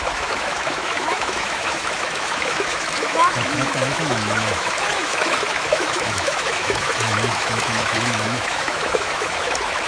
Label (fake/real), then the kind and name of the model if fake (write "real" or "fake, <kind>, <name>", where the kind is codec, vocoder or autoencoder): fake, autoencoder, DAC-VAE